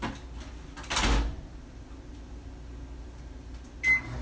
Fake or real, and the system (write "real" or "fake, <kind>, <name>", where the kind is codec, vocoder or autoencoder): real